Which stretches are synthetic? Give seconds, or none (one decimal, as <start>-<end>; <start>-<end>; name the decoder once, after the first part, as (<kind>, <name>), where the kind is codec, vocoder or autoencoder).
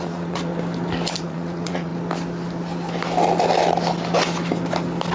0.0-0.5 (vocoder, Vocos); 1.2-1.9